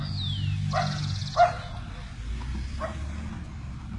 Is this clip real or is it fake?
real